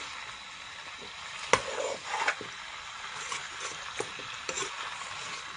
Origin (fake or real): real